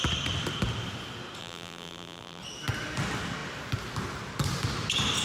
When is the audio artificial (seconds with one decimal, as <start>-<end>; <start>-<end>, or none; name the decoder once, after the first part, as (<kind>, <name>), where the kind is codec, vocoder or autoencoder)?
1.4-2.4 (vocoder, BigVGAN v2)